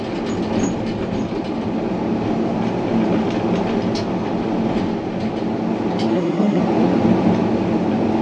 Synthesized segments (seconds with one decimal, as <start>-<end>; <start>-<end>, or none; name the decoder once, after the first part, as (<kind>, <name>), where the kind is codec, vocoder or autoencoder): 6.1-6.6 (codec, SNAC)